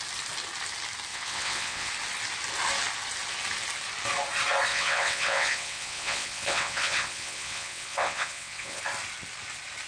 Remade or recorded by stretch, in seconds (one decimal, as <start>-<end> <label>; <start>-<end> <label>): 0.0-1.1 recorded; 1.1-1.9 remade; 1.9-4.7 recorded; 4.7-8.8 remade; 8.8-9.9 recorded